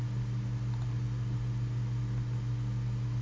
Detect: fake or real real